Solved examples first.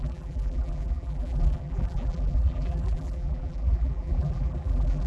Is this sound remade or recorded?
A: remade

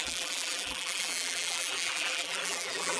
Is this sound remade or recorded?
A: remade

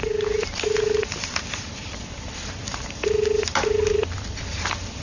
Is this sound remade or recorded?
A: remade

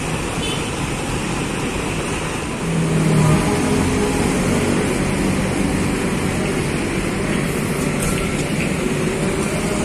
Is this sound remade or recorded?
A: recorded